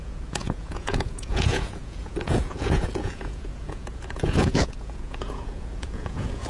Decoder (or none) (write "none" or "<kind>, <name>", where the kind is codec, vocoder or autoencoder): vocoder, Vocos